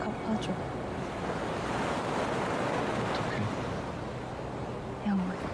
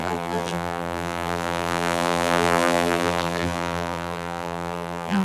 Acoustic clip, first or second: first